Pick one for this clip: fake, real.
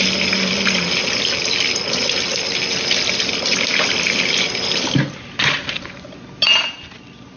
real